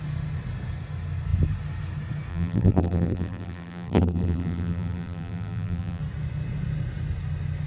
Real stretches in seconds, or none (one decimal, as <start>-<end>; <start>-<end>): 0.0-2.3; 6.0-7.7